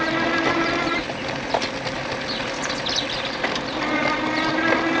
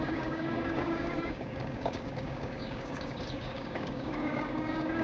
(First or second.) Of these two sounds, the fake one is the second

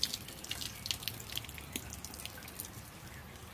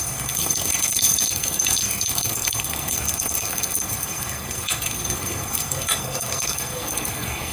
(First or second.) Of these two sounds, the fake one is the second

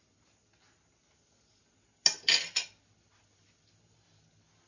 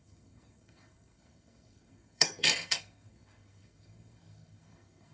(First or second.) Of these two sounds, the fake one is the second